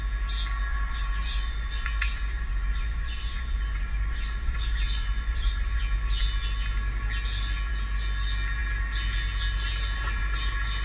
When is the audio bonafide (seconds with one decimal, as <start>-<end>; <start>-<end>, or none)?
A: 0.0-0.7; 5.8-10.8